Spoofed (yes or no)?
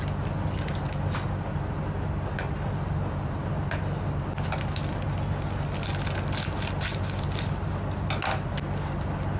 no